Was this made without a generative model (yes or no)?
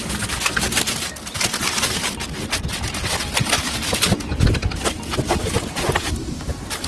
yes